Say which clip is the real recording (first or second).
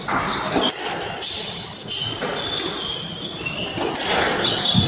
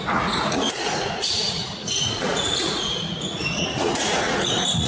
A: first